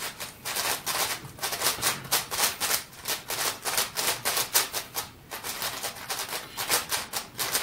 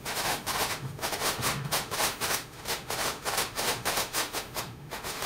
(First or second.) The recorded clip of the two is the first